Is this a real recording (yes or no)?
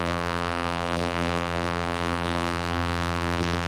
no